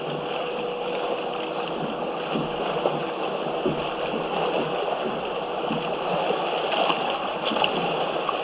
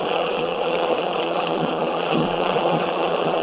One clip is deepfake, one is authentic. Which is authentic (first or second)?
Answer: first